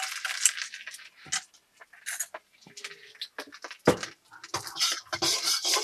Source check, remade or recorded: recorded